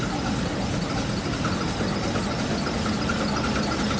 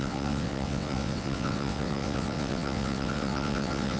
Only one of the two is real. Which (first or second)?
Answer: first